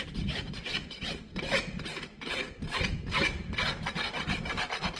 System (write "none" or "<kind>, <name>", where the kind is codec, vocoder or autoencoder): none